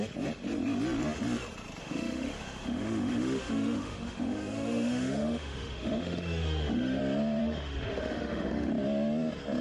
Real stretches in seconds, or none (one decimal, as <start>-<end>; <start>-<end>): 0.0-1.8; 7.0-7.4; 8.7-9.6